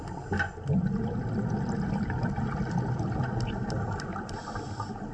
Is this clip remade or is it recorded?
recorded